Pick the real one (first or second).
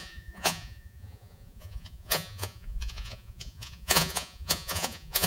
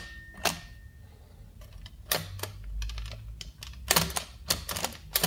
second